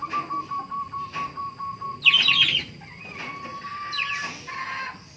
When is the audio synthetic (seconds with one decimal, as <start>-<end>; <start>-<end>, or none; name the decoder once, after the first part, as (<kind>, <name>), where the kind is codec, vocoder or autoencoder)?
none